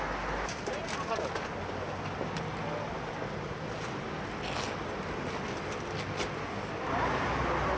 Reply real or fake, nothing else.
real